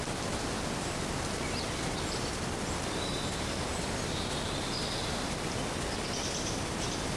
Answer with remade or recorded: remade